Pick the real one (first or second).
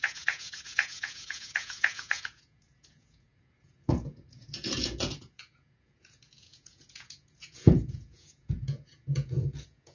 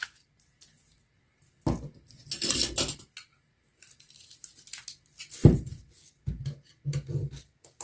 second